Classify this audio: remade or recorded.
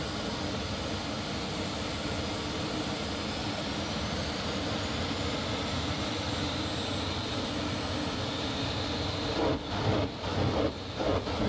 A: recorded